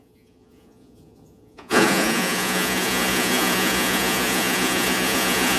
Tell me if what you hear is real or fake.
fake